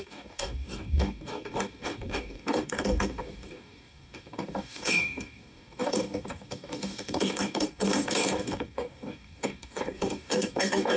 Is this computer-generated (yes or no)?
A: yes